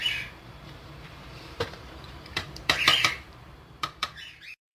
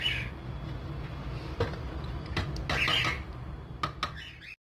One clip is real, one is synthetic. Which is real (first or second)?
second